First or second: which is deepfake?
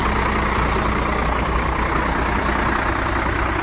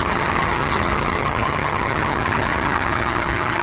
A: second